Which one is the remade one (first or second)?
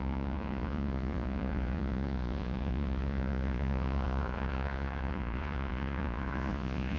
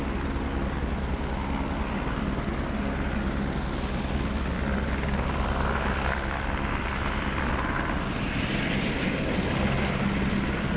first